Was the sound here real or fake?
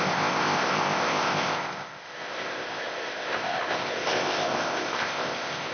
fake